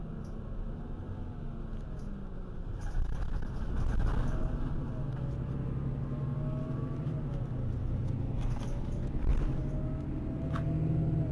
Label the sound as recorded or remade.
recorded